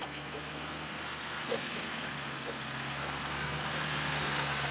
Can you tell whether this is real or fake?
fake